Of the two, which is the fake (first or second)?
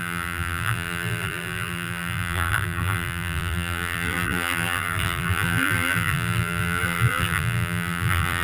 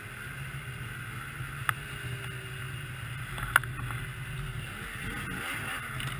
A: first